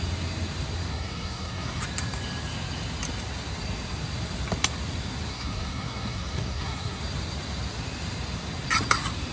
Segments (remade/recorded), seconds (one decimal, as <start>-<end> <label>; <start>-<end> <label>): 0.0-0.9 recorded; 0.9-1.8 remade; 1.8-5.3 recorded; 5.3-7.0 remade; 7.0-9.3 recorded